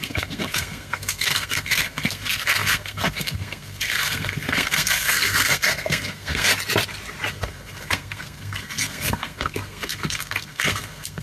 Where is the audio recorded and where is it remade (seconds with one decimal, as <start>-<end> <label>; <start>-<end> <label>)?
0.0-6.5 remade; 6.5-7.3 recorded; 7.3-11.2 remade